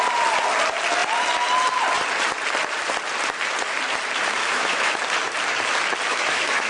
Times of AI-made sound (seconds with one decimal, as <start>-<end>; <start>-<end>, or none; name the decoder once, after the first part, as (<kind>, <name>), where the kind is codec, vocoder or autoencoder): 4.4-4.9 (autoencoder, DAC-VAE); 6.1-6.7